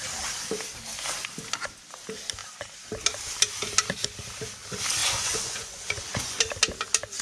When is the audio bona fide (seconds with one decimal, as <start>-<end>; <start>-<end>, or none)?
0.0-5.0; 6.4-7.2